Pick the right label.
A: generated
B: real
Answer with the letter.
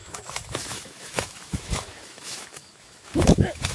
A